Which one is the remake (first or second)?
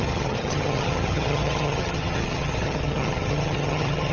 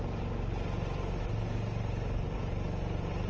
first